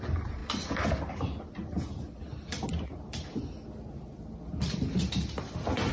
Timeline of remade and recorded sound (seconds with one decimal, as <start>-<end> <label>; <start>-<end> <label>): 0.0-5.9 recorded